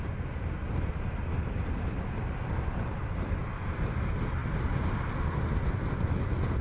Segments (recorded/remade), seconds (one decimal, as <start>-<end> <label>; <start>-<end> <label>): 0.0-6.6 recorded